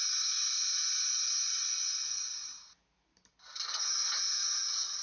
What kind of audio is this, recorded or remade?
recorded